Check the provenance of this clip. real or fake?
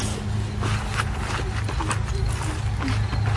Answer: real